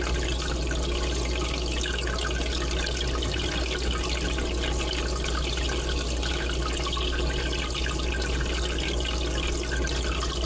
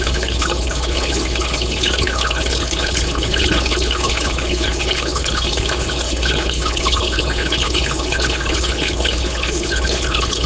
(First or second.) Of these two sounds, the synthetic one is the second